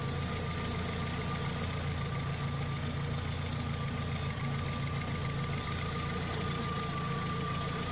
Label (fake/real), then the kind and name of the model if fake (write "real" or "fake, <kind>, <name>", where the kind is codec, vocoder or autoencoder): real